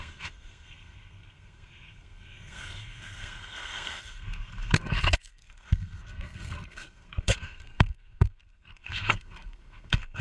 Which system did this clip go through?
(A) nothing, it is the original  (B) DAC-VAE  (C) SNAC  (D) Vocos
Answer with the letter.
C